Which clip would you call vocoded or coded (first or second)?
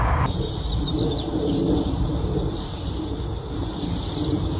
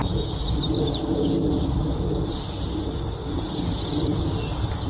first